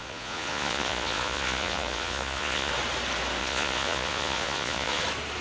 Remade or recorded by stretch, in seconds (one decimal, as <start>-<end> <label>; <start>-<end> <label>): 0.0-2.7 remade; 2.7-3.4 recorded; 3.4-5.0 remade; 5.0-5.4 recorded